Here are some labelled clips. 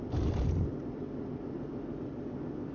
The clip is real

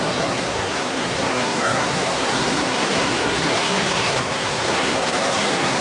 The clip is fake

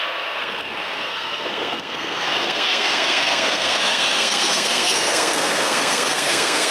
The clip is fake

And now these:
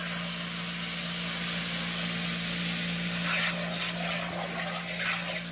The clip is real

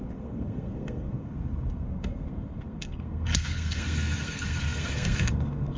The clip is fake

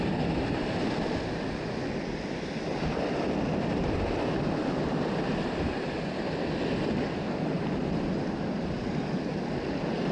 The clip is real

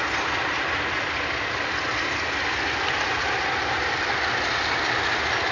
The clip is real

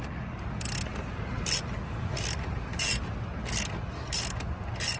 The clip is real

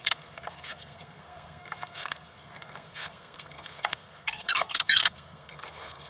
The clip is fake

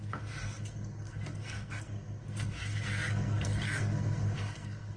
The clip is fake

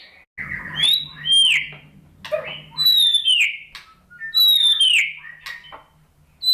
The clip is real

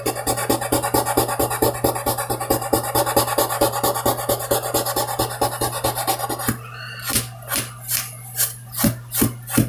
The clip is real